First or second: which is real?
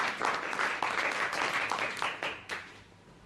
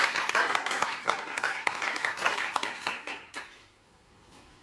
first